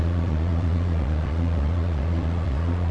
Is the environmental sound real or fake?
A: fake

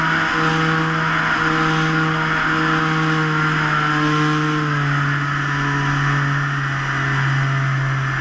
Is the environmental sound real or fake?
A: real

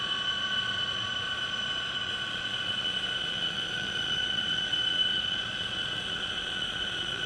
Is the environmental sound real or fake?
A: fake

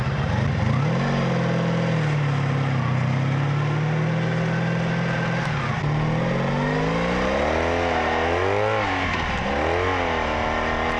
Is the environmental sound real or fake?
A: real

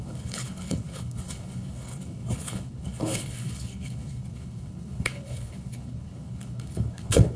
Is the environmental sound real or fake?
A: fake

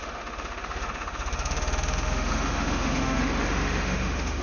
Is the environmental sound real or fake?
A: fake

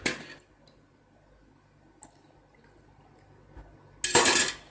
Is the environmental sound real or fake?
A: real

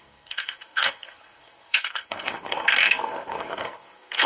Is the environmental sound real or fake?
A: fake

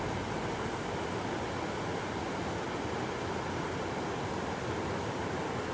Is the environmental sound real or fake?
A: real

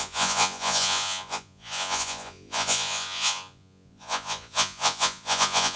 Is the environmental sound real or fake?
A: fake